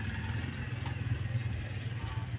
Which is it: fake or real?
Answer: real